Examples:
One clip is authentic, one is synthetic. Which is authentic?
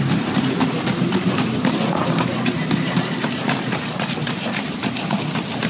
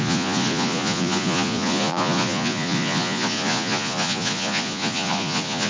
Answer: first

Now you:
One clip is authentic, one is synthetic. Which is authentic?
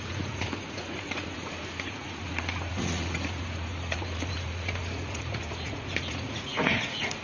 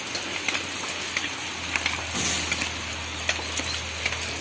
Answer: second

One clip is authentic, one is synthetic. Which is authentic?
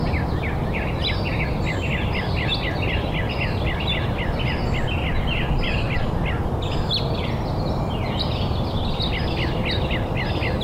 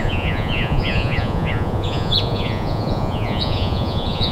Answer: first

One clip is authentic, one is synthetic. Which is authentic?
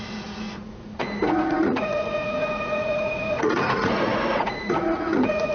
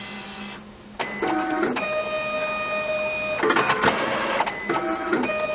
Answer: second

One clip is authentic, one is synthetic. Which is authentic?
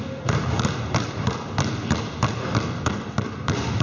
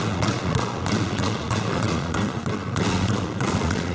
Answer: first